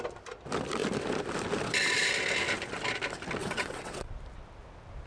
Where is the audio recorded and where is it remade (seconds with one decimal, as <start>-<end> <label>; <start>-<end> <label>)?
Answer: 0.0-3.4 recorded; 3.4-4.1 remade; 4.1-5.1 recorded